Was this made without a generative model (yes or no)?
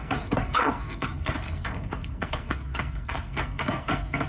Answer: no